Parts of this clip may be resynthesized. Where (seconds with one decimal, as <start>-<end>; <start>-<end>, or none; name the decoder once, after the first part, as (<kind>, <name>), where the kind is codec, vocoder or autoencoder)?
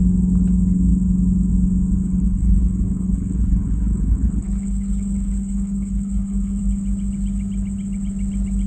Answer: 2.0-6.6 (codec, HILCodec)